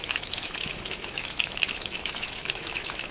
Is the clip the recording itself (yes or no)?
no